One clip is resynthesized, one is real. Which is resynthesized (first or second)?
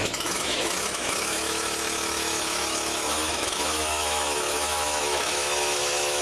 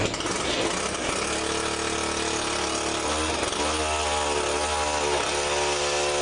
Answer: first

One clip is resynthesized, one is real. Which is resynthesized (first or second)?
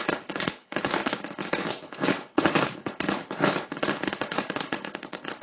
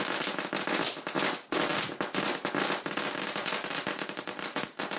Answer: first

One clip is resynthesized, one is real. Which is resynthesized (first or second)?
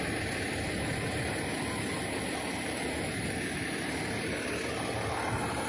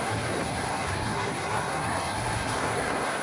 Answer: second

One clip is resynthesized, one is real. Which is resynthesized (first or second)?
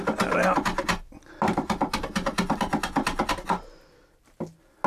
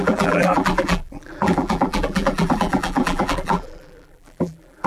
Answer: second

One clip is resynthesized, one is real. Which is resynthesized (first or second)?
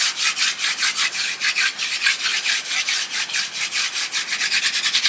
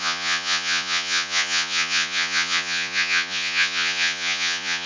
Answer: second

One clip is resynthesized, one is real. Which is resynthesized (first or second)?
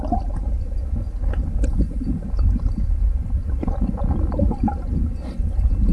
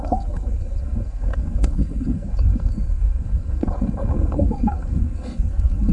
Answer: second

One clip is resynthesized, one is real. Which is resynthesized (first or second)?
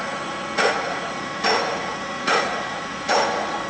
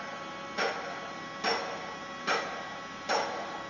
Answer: first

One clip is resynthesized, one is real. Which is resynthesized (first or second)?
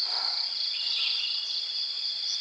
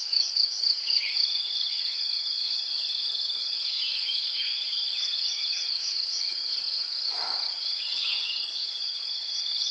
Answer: second